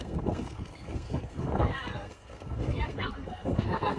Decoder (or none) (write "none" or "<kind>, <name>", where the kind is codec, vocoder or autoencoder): codec, SNAC